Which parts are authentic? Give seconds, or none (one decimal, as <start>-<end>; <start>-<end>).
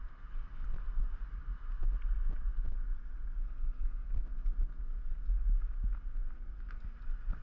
0.0-7.4